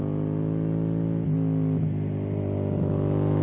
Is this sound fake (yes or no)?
no